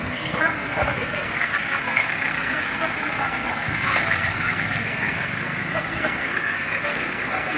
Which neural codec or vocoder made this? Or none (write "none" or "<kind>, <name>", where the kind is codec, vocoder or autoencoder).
codec, SNAC